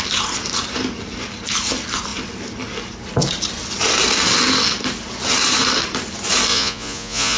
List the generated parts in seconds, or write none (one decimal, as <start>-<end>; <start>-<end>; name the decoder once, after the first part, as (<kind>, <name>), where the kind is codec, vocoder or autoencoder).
6.5-7.4 (vocoder, Vocos)